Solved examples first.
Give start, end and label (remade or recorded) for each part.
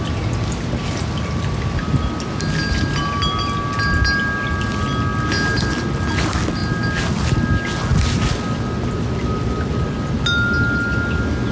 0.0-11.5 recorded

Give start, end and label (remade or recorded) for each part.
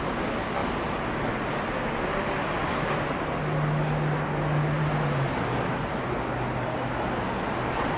0.0-8.0 recorded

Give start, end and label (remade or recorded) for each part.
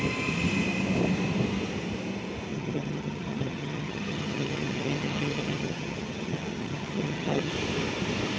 0.0-2.5 recorded; 2.5-7.5 remade; 7.5-8.4 recorded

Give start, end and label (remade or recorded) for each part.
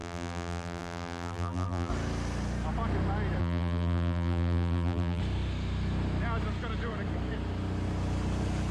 0.0-1.9 remade; 1.9-3.4 recorded; 3.4-5.2 remade; 5.2-8.7 recorded